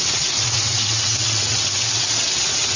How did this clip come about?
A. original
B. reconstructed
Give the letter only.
B